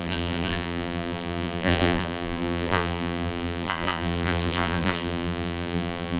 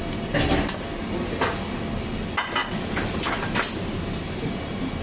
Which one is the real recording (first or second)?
second